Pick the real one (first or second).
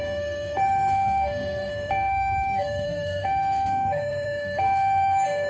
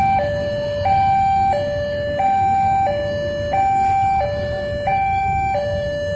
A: second